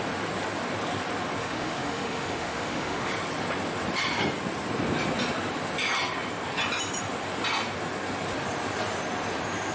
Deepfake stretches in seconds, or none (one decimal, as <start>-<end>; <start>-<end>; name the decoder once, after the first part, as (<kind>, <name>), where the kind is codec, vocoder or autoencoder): 1.4-3.1 (autoencoder, DAC-VAE)